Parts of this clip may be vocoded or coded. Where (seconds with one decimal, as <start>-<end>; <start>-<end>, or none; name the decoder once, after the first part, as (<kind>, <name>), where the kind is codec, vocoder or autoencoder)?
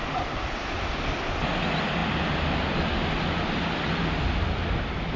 none